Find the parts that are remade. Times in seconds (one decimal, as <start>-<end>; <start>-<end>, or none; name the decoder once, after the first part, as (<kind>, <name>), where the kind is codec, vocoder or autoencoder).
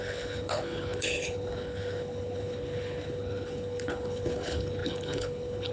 0.0-5.7 (codec, HILCodec)